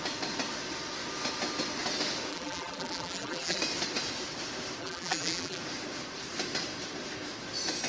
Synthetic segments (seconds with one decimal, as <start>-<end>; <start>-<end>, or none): 2.3-3.6; 4.8-5.6